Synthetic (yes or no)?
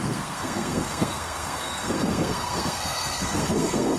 yes